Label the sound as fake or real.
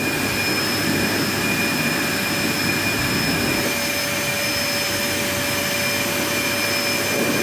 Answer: real